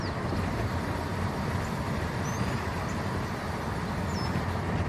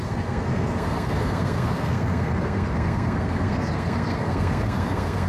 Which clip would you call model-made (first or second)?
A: second